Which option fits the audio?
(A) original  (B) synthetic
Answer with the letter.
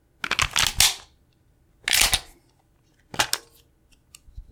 A